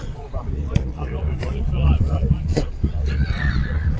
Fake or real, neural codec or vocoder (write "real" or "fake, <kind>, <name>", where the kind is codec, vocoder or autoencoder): fake, vocoder, Vocos